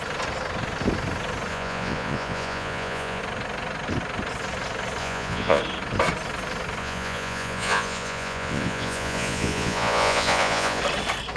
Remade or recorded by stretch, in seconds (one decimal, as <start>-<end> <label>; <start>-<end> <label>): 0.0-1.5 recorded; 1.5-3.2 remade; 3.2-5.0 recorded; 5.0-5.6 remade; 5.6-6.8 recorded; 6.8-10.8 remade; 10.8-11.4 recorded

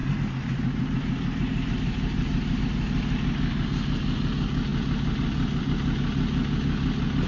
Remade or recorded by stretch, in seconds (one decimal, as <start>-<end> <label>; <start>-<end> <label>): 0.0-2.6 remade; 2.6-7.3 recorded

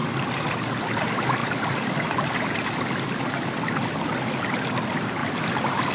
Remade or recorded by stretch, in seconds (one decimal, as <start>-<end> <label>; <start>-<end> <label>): 0.0-5.9 recorded

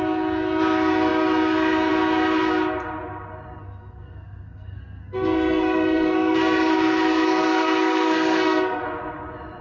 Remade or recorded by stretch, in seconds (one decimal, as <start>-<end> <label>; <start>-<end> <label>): 0.0-3.6 recorded; 3.6-8.8 remade; 8.8-9.6 recorded